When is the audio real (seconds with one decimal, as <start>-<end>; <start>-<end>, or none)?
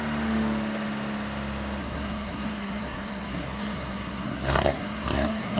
0.0-1.8